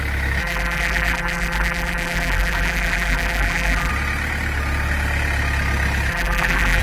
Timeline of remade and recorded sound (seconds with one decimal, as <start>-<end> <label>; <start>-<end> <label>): 0.0-0.4 recorded; 0.4-3.9 remade; 3.9-6.1 recorded; 6.1-6.8 remade